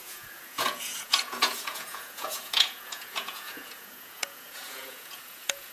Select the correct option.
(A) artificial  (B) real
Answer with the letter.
A